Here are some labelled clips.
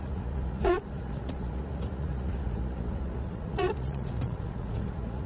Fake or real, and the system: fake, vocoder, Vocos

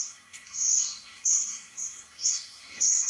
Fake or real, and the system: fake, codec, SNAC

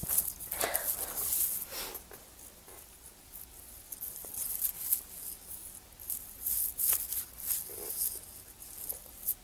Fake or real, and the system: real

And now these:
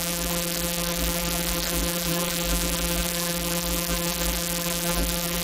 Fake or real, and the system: fake, vocoder, BigVGAN v2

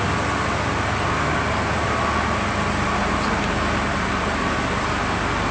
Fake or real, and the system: real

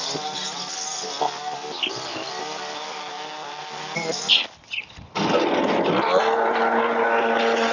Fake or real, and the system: real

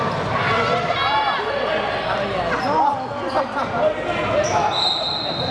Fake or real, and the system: real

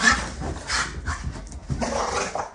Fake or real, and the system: real